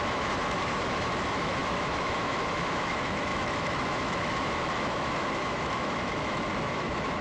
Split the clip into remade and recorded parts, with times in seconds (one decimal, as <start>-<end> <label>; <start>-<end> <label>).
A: 0.0-7.2 remade